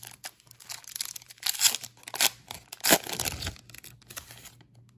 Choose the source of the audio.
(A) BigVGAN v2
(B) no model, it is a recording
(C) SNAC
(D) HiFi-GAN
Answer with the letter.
B